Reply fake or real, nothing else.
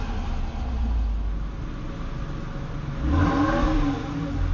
real